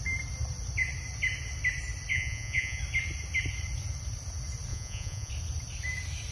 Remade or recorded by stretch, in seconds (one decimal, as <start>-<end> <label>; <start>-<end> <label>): 0.0-2.1 recorded; 2.1-2.8 remade; 2.8-4.7 recorded; 4.7-5.3 remade; 5.3-6.3 recorded